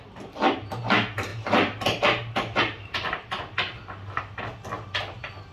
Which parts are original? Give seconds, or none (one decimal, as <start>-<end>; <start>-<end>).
0.0-5.5

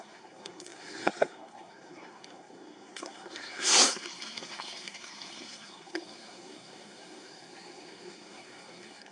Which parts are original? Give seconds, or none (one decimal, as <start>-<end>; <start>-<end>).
none

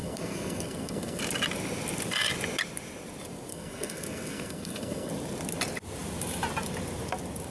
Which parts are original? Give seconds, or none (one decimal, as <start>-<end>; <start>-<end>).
1.2-3.5; 5.1-7.5

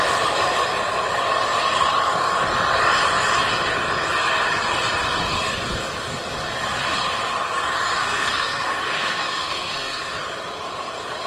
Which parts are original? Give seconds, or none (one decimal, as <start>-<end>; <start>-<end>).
0.0-8.0; 10.0-11.3

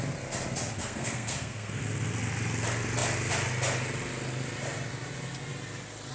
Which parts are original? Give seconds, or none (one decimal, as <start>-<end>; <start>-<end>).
0.0-0.8; 1.8-6.1

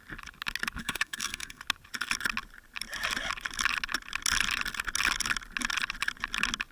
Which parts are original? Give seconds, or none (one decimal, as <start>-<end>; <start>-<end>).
0.0-0.8; 1.6-6.7